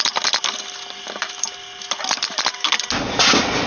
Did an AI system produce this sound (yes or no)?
no